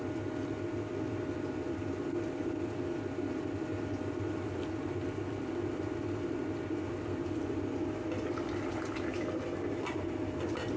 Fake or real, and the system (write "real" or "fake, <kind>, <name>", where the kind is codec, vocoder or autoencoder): real